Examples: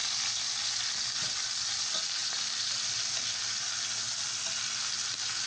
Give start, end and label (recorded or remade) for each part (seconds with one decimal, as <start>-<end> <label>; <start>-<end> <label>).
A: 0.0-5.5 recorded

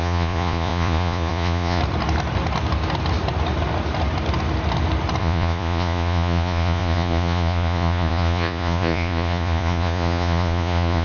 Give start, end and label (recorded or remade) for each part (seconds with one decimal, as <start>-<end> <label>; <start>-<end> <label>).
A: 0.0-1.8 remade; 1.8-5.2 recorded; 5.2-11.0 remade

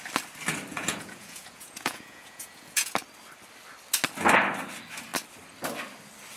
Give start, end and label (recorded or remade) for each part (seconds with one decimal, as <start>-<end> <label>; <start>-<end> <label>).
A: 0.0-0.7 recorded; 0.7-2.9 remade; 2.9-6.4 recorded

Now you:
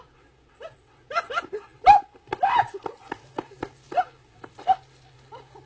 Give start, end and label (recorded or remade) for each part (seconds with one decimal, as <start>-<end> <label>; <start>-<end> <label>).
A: 0.0-5.7 recorded

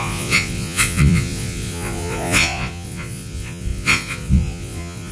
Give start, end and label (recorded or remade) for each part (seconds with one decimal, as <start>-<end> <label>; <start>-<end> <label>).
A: 0.0-5.1 remade

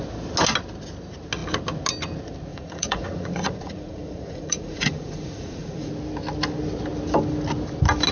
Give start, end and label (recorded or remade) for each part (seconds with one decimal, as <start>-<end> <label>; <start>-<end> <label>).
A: 0.0-2.5 recorded; 2.5-5.9 remade; 5.9-8.1 recorded

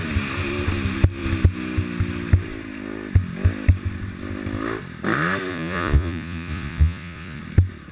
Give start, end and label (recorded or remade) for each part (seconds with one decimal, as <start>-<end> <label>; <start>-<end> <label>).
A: 0.0-5.5 recorded; 5.5-7.4 remade; 7.4-7.9 recorded